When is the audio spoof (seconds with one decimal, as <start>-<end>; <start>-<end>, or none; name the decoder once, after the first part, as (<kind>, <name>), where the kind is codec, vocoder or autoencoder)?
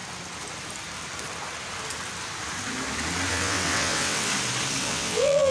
3.3-4.3 (vocoder, WaveNeXt); 4.8-5.5